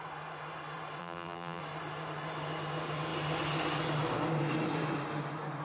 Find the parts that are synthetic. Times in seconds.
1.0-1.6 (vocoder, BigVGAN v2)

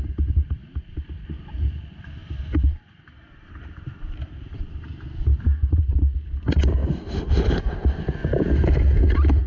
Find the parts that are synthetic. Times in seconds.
2.2-4.7 (vocoder, BigVGAN v2); 5.3-5.9; 6.8-8.0

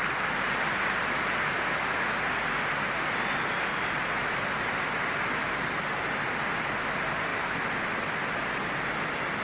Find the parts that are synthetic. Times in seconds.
7.3-8.6 (vocoder, BigVGAN v2)

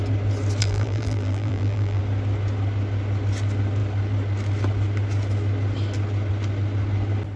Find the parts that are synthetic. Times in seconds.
0.6-2.0 (vocoder, BigVGAN v2)

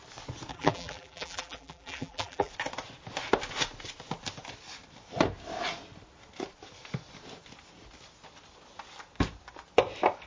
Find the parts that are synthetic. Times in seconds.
0.5-2.5 (vocoder, BigVGAN v2)